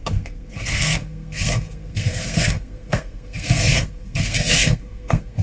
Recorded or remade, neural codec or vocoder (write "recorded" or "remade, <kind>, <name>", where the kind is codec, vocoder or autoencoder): remade, codec, SNAC